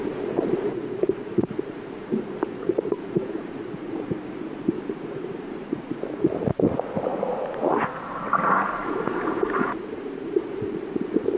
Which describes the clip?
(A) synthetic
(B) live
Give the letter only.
A